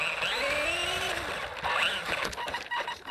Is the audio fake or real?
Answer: real